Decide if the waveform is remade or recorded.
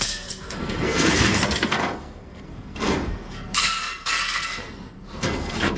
remade